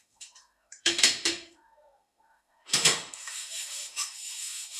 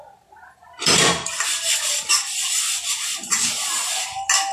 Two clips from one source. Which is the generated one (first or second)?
first